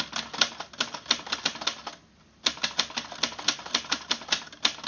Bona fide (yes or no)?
yes